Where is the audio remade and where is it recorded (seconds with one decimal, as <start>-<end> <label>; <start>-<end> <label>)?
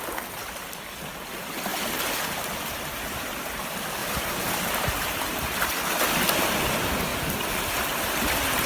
0.0-8.7 recorded